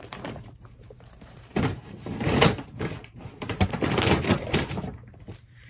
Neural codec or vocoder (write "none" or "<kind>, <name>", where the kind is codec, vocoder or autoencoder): vocoder, BigVGAN v2